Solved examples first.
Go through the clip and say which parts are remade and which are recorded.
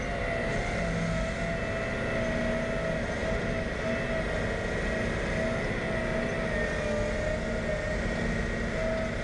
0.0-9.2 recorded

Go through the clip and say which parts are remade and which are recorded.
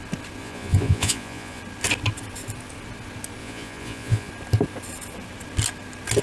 0.0-0.4 recorded; 0.4-1.6 remade; 1.6-3.4 recorded; 3.4-4.3 remade; 4.3-6.2 recorded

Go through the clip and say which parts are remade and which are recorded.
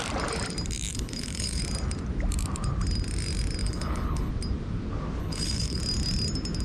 0.0-0.9 recorded; 0.9-1.6 remade; 1.6-3.6 recorded; 3.6-4.3 remade; 4.3-5.2 recorded; 5.2-5.8 remade; 5.8-6.6 recorded